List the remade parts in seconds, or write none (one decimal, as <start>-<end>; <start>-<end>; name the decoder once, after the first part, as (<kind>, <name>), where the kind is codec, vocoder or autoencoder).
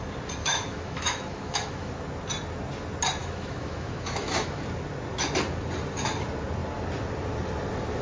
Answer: 0.4-1.9 (autoencoder, DAC-VAE); 3.2-4.6